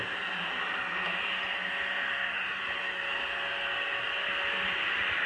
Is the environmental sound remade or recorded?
recorded